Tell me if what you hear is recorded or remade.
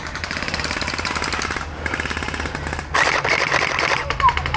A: recorded